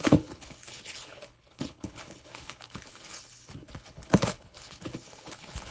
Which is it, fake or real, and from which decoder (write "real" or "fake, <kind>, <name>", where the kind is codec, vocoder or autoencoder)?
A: fake, codec, HILCodec